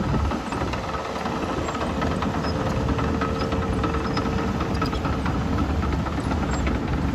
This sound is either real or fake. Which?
real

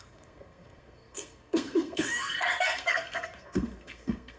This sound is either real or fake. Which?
fake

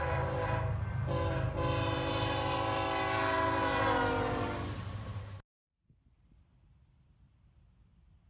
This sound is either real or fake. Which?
real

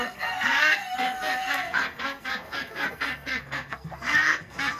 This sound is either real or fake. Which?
fake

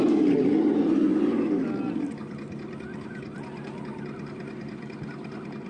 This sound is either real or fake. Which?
real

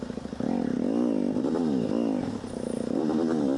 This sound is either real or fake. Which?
real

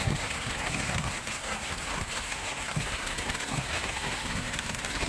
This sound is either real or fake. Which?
fake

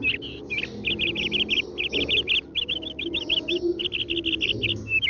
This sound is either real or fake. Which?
real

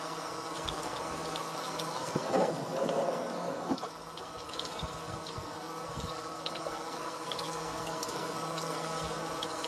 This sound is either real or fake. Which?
fake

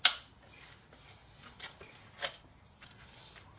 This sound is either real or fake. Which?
real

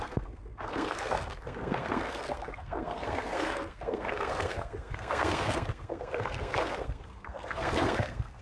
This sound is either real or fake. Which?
fake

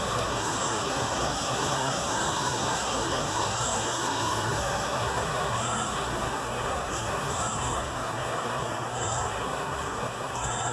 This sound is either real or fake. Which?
fake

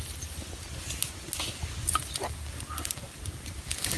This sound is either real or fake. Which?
real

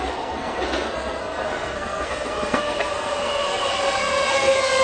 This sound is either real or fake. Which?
fake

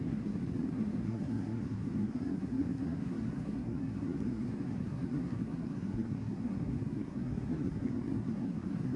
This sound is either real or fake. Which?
fake